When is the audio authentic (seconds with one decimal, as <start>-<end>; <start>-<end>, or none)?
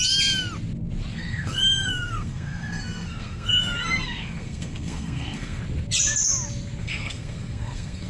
0.0-1.1; 5.6-6.8